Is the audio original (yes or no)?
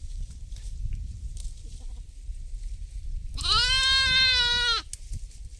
yes